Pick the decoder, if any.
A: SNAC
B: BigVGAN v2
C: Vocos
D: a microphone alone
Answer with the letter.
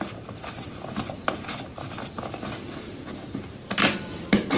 D